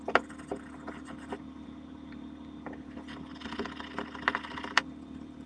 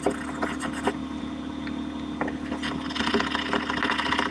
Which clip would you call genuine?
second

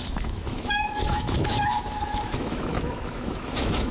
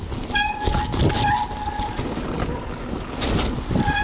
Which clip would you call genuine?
second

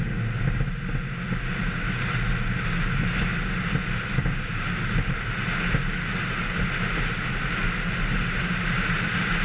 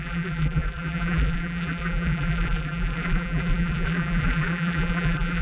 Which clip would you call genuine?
first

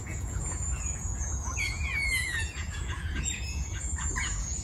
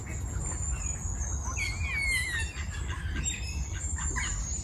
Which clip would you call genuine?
second